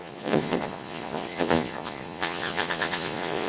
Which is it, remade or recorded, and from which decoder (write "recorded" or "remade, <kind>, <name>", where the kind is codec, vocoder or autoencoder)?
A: remade, vocoder, Vocos